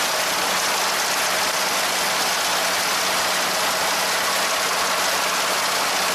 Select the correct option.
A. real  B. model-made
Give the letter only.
A